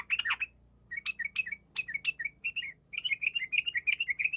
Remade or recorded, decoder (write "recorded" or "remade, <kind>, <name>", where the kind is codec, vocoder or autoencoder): recorded